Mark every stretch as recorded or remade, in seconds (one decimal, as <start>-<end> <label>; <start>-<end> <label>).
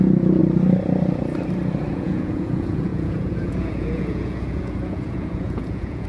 0.0-0.4 remade; 0.4-1.9 recorded; 1.9-6.1 remade